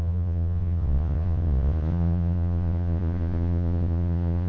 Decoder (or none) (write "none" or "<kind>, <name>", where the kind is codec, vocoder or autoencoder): vocoder, Vocos